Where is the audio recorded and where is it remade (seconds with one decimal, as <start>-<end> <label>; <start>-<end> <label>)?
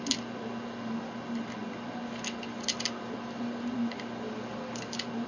0.0-5.3 recorded